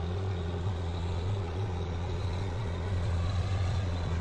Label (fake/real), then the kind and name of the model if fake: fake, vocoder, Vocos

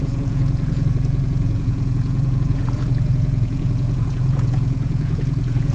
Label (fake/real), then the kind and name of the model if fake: fake, vocoder, Vocos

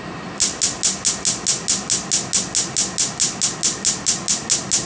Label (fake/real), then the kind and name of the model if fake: real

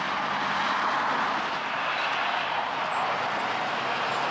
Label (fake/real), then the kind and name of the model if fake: real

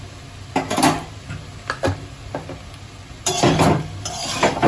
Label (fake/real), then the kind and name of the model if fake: real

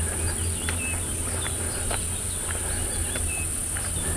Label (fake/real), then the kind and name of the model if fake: real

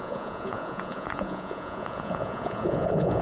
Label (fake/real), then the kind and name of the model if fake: fake, vocoder, Vocos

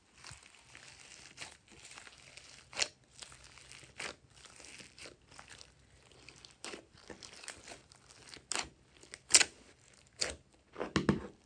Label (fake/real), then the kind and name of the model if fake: real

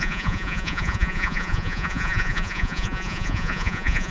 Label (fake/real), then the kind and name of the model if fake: fake, vocoder, Vocos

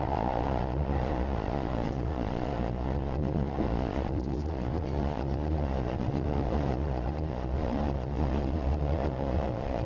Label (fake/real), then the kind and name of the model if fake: fake, vocoder, Vocos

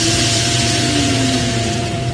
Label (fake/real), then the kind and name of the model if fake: fake, vocoder, Vocos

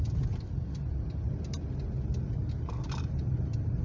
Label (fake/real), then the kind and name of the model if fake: real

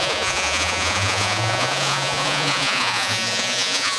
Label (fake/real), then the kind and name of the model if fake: fake, vocoder, Vocos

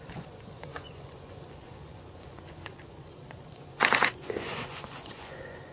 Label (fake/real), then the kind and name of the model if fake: fake, vocoder, Vocos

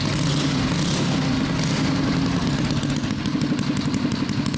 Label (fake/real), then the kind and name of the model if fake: real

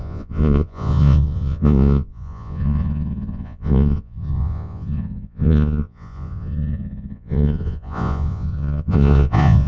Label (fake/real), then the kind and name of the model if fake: fake, vocoder, Vocos